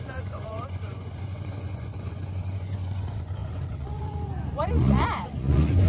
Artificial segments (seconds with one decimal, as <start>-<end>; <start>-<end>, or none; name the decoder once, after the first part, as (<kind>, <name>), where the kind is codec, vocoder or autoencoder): 0.0-5.9 (vocoder, Vocos)